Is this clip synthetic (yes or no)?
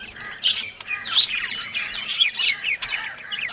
yes